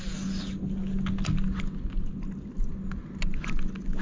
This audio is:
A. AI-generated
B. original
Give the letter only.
B